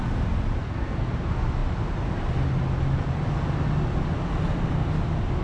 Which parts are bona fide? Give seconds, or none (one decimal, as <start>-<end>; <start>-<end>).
0.0-0.6; 1.1-5.4